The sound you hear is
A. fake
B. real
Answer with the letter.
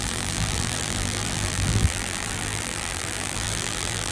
A